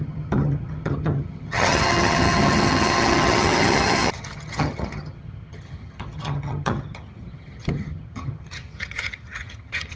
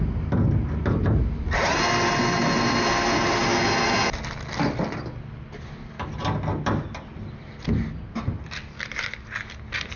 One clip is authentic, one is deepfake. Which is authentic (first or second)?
second